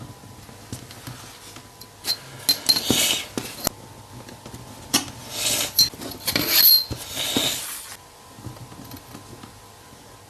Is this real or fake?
real